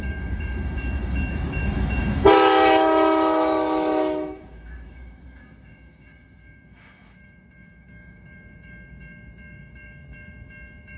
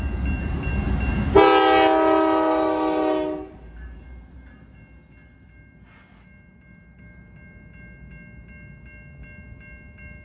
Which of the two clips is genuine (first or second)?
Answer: second